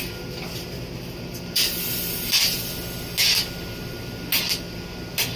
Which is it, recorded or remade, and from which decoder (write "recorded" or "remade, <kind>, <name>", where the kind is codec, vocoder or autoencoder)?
recorded